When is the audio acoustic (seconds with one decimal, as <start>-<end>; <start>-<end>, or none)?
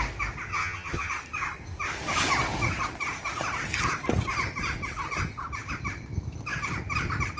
0.0-0.5; 1.1-7.4